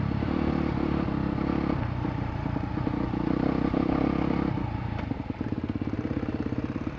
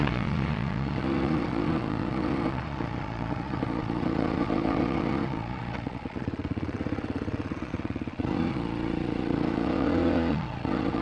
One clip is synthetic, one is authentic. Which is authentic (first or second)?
first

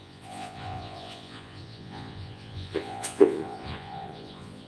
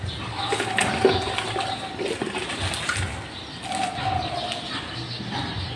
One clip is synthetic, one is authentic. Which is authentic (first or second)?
second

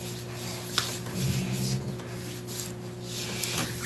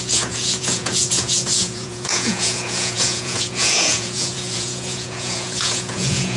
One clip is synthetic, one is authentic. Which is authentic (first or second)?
first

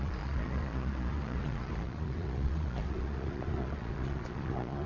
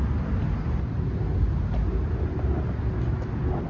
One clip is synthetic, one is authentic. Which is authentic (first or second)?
second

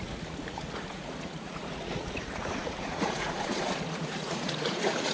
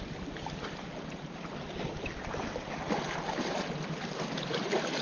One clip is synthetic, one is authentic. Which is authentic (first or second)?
second